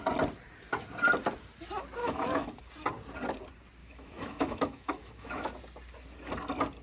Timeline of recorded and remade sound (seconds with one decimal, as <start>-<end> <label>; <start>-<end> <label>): 0.0-2.0 recorded; 2.0-2.6 remade; 2.6-3.8 recorded; 3.8-5.5 remade; 5.5-6.8 recorded